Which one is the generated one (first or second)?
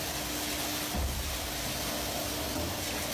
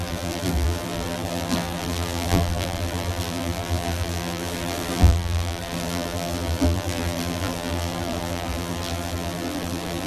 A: second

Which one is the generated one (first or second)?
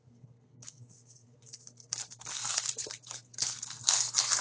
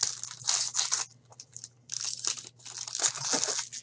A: first